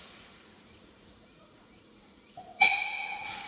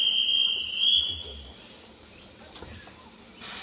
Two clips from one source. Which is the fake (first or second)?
first